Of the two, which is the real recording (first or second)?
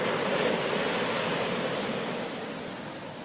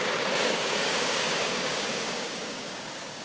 first